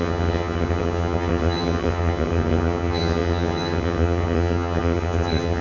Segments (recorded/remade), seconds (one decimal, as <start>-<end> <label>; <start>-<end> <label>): 0.0-5.6 remade